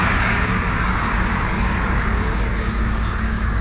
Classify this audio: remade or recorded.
remade